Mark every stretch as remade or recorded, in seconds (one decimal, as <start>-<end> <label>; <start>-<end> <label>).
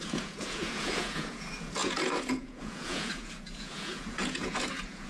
0.0-5.1 remade